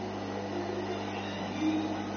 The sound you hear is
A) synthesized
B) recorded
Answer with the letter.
B